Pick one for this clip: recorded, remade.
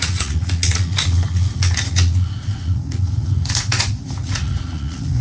remade